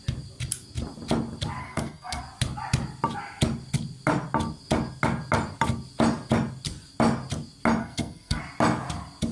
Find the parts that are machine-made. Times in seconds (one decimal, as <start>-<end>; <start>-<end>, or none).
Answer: 1.6-2.2; 7.8-8.4